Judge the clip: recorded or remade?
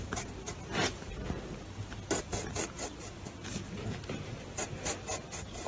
recorded